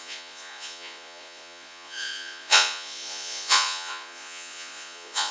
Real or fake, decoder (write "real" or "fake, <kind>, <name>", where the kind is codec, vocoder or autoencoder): fake, vocoder, Vocos